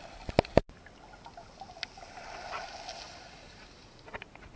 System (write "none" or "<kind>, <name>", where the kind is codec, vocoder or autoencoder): none